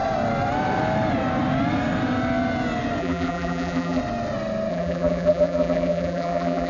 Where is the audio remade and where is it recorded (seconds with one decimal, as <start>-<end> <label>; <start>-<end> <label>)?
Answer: 0.0-3.0 recorded; 3.0-4.0 remade; 4.0-4.7 recorded; 4.7-6.7 remade